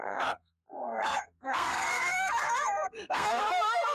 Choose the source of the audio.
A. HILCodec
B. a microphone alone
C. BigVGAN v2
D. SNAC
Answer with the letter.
D